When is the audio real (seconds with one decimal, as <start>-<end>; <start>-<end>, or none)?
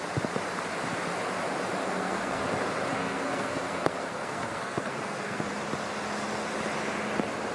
0.0-1.8; 2.4-2.9; 5.5-7.5